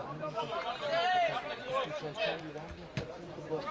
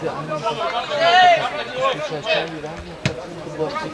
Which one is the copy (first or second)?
first